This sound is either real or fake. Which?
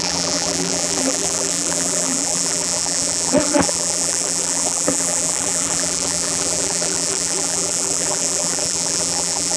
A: fake